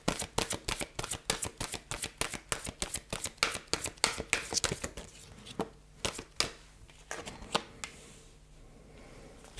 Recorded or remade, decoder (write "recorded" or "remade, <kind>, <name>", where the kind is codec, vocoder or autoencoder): recorded